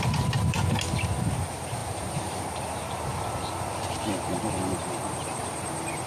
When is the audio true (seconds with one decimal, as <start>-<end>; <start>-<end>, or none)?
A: 0.6-1.3

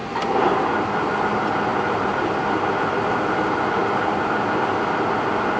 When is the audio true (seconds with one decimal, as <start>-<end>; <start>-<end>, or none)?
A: 1.2-1.7; 3.2-3.8; 4.7-5.6

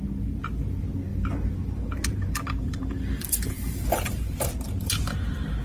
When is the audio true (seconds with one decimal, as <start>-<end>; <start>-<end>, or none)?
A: 0.0-1.1; 4.5-5.6

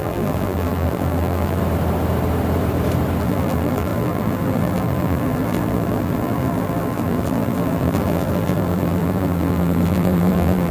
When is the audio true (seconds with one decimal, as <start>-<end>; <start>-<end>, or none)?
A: 1.6-3.2

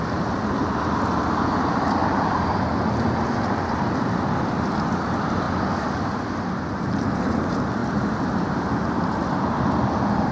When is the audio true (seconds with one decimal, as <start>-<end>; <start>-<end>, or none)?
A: 7.8-8.6